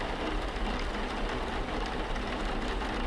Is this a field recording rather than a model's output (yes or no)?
yes